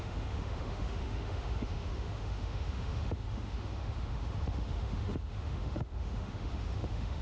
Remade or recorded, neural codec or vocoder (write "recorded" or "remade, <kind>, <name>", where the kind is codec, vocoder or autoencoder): remade, autoencoder, DAC-VAE